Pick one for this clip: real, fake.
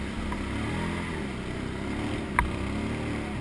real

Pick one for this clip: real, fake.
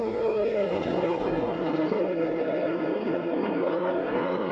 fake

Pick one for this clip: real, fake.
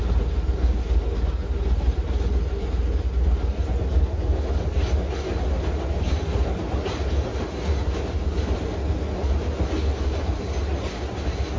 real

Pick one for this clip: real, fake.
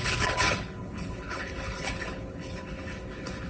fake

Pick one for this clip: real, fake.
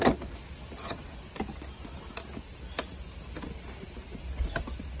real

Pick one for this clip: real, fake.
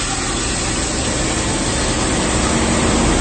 real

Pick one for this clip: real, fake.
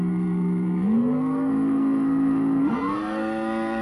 fake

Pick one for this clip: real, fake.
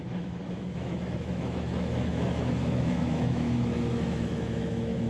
fake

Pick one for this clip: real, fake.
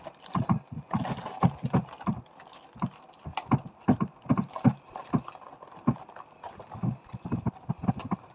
real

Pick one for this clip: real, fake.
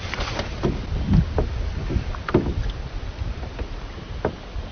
real